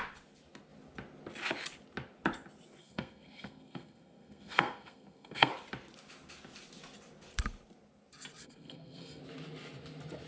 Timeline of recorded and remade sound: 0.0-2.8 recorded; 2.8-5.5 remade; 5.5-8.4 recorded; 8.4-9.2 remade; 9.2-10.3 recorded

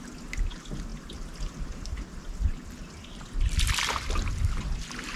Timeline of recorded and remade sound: 0.0-5.2 recorded

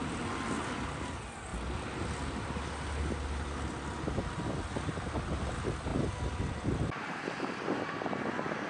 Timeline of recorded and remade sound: 0.0-8.7 recorded

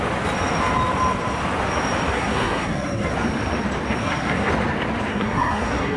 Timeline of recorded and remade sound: 0.0-2.1 recorded; 2.1-3.1 remade; 3.1-4.0 recorded; 4.0-4.5 remade; 4.5-5.1 recorded; 5.1-6.0 remade

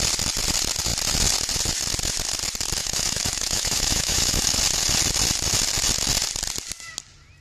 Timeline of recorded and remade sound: 0.0-2.8 recorded; 2.8-4.6 remade; 4.6-7.4 recorded

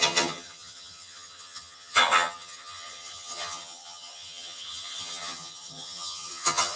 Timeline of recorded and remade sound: 0.0-6.8 remade